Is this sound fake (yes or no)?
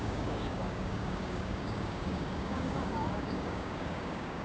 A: yes